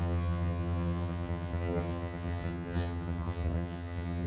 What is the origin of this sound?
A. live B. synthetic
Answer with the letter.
B